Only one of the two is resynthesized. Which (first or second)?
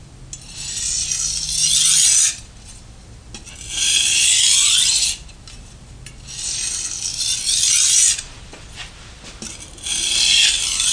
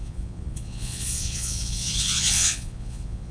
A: second